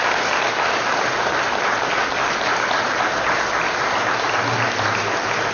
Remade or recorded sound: recorded